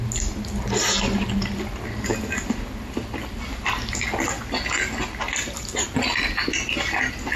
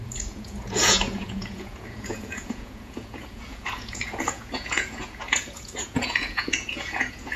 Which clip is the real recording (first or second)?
first